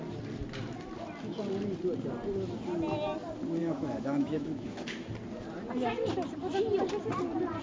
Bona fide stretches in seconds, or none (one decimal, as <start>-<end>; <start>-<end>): 0.0-3.6; 5.1-7.6